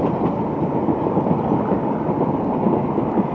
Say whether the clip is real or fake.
real